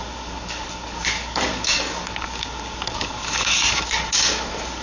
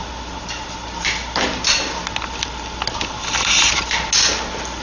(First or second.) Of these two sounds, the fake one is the first